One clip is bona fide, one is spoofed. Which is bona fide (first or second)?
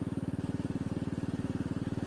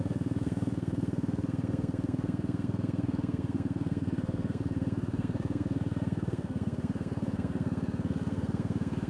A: first